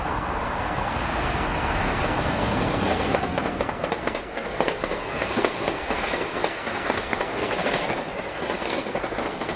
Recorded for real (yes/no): no